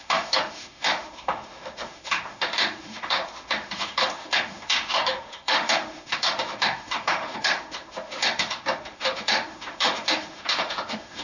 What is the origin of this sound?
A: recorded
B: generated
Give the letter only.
B